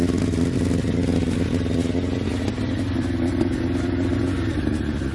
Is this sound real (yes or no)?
yes